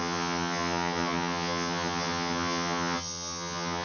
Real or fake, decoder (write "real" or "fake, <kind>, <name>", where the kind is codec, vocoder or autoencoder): fake, vocoder, HiFi-GAN